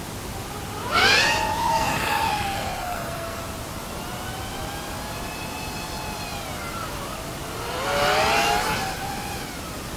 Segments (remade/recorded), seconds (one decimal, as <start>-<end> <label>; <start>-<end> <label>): 0.0-1.6 recorded; 1.6-3.4 remade; 3.4-10.0 recorded